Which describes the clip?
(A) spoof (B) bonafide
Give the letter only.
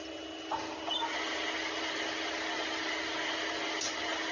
B